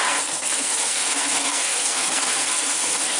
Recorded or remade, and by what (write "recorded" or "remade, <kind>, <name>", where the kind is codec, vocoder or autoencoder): remade, codec, SNAC